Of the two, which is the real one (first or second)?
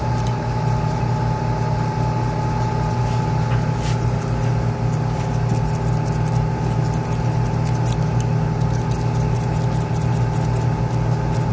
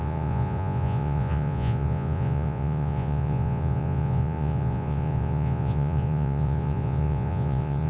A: first